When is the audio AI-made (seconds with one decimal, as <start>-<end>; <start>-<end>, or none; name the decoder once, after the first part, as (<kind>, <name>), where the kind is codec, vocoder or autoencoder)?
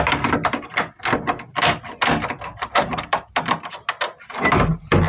2.5-3.3 (vocoder, BigVGAN v2)